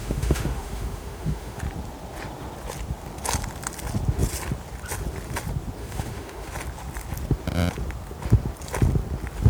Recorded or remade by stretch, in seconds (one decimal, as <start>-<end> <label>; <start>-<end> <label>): 0.0-1.6 remade; 1.6-5.8 recorded; 5.8-6.5 remade; 6.5-9.5 recorded

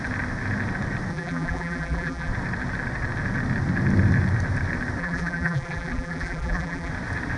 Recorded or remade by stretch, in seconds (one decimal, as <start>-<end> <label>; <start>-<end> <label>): 0.0-1.1 recorded; 1.1-2.3 remade; 2.3-5.0 recorded; 5.0-6.9 remade; 6.9-7.4 recorded

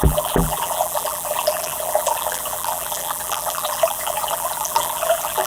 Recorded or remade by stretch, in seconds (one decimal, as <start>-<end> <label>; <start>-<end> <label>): 0.0-5.5 remade

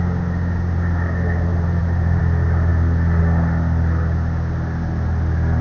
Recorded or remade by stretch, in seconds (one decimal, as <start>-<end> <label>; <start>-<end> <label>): 0.0-1.5 recorded; 1.5-2.2 remade; 2.2-5.6 recorded